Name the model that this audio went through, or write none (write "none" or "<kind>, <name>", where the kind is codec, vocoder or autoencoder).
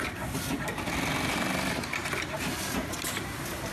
none